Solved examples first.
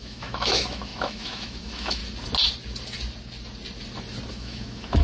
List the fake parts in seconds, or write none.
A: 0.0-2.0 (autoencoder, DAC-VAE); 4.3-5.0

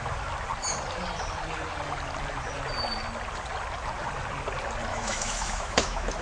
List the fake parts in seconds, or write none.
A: 4.9-6.2 (autoencoder, DAC-VAE)

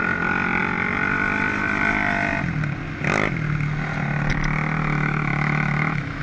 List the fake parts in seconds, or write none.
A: 4.8-6.2 (autoencoder, DAC-VAE)